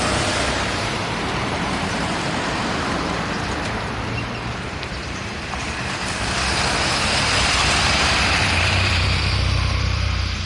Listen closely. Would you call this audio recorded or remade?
remade